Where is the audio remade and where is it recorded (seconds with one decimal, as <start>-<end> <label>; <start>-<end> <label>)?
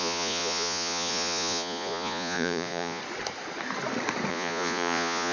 0.0-3.0 remade; 3.0-4.3 recorded; 4.3-5.3 remade